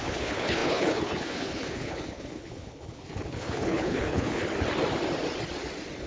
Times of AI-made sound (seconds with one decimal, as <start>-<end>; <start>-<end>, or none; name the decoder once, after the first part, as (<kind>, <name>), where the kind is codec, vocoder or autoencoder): 0.0-4.4 (codec, HILCodec)